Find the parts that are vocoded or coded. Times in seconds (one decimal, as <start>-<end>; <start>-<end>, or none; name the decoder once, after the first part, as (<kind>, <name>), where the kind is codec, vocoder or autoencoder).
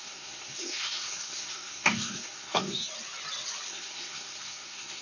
0.0-2.9 (codec, SNAC); 3.7-5.0